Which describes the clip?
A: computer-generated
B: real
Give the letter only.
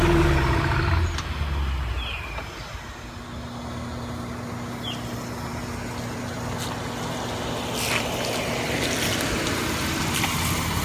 B